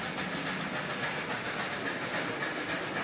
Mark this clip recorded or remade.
recorded